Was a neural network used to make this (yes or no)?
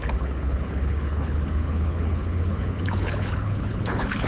yes